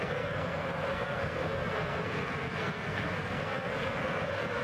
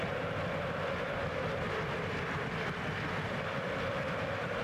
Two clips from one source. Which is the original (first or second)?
second